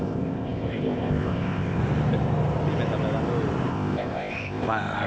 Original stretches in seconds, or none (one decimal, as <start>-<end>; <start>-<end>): 1.8-3.7